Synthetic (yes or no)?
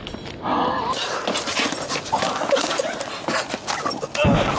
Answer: no